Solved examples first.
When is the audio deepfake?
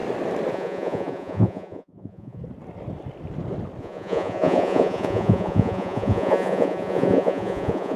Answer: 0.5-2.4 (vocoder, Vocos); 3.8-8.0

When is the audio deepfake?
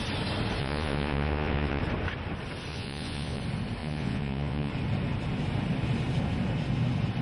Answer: 0.6-1.8 (vocoder, Vocos); 2.7-3.4; 3.8-4.7